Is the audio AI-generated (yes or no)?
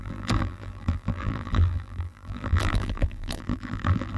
yes